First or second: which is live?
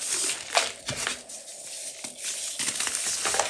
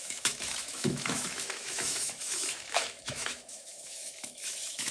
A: first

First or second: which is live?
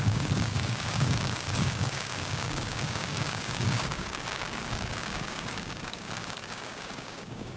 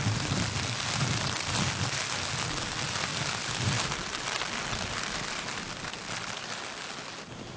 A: second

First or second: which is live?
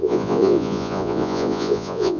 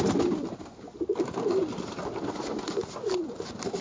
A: second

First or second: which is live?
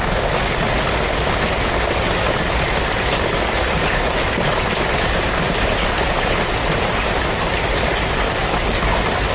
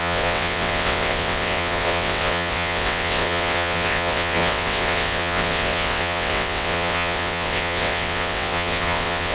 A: first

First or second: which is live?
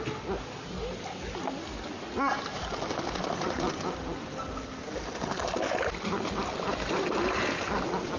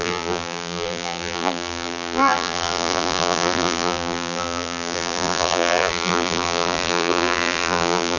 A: first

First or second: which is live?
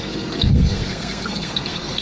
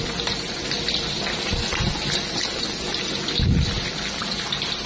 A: second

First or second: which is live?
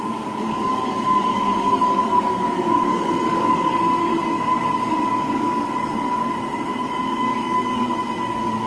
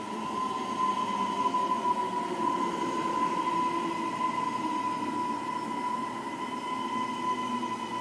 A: second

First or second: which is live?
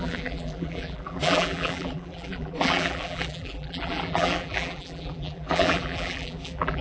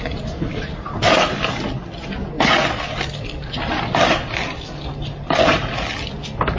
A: second